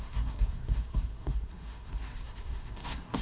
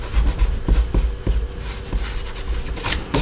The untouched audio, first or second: second